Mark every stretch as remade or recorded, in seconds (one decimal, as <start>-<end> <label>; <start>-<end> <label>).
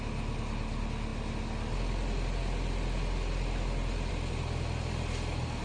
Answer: 0.0-5.6 recorded